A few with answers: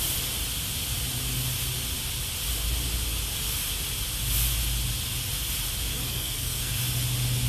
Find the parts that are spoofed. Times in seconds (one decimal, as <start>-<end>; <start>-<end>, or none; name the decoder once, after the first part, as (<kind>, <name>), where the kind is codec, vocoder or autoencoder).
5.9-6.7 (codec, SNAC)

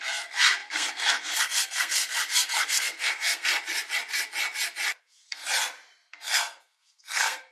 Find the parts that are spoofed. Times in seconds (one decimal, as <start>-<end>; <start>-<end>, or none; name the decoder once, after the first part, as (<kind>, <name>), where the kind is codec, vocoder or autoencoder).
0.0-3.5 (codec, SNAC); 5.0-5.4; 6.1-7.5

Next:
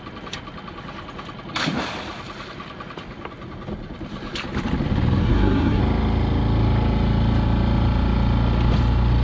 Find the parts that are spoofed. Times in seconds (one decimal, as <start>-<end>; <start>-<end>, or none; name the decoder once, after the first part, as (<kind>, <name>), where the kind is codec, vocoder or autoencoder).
5.2-5.8 (codec, SNAC)

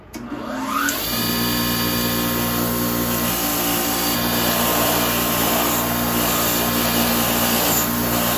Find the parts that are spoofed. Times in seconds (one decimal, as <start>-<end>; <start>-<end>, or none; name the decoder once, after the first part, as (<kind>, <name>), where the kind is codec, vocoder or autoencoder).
none